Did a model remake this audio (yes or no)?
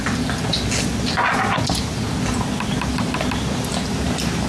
no